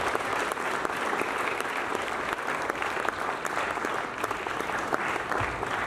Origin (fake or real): real